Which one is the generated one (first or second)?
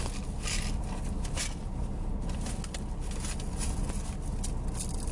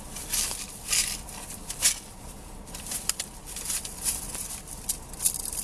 second